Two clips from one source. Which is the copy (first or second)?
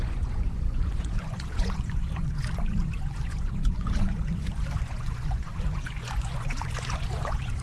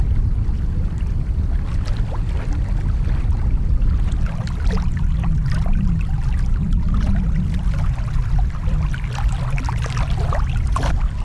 first